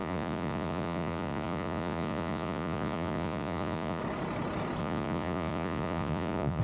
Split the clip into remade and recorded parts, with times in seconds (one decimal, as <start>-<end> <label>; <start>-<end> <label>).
0.0-4.0 remade; 4.0-4.8 recorded; 4.8-6.6 remade